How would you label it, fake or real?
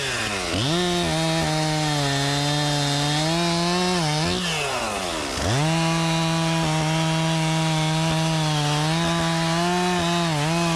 real